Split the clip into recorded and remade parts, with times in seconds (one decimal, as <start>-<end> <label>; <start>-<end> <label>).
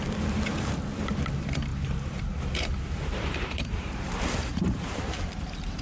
0.0-1.7 recorded; 1.7-5.2 remade; 5.2-5.8 recorded